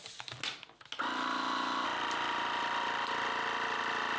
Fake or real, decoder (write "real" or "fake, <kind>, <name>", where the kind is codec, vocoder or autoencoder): real